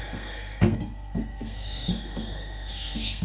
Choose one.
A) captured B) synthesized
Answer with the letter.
B